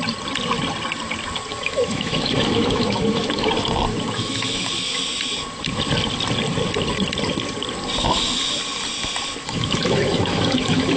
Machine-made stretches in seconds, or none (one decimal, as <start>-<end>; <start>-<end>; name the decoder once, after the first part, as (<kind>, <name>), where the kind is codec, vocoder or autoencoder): 1.5-3.5 (autoencoder, DAC-VAE); 3.9-5.0; 9.4-11.0